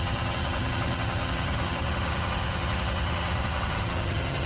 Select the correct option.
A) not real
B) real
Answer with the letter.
A